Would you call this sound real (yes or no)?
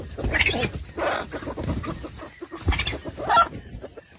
yes